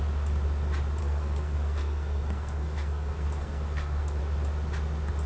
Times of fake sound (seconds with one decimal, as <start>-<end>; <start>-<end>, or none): 1.0-4.2